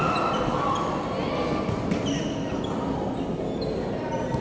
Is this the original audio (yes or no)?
yes